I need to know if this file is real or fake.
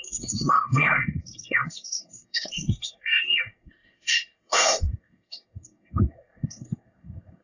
fake